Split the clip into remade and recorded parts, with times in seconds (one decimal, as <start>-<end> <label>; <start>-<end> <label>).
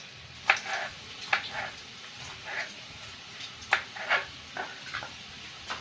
0.0-0.8 recorded; 0.8-3.7 remade; 3.7-5.8 recorded